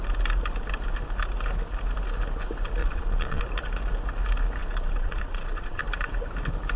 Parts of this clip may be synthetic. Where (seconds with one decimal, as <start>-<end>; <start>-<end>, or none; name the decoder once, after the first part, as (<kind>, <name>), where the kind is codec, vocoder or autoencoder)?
2.8-3.4 (vocoder, Vocos); 4.6-5.8